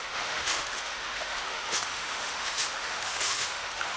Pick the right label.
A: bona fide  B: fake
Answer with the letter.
B